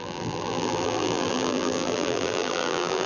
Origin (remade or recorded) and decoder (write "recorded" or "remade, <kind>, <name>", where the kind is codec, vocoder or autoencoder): remade, vocoder, BigVGAN v2